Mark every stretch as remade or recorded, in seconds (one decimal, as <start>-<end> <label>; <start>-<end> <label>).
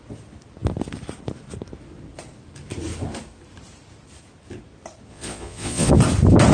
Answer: 0.0-5.1 recorded; 5.1-5.9 remade; 5.9-6.5 recorded